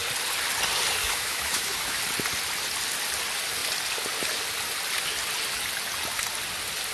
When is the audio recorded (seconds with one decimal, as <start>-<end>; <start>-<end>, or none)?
0.0-1.0; 2.0-6.9